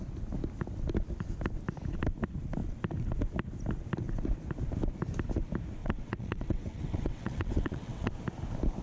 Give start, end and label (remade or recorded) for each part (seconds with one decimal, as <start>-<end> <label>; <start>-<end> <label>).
0.0-5.8 recorded; 5.8-8.1 remade; 8.1-8.8 recorded